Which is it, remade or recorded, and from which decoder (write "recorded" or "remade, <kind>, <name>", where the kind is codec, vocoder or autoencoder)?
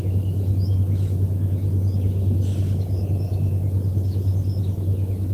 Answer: remade, autoencoder, DAC-VAE